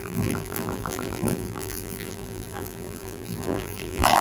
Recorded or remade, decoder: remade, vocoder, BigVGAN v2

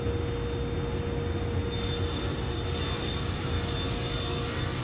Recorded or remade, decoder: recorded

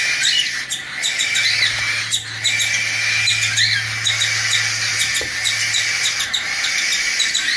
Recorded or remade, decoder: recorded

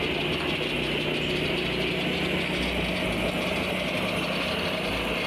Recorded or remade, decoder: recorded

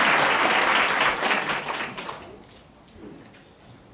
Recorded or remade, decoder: recorded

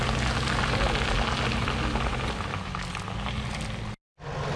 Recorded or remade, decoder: recorded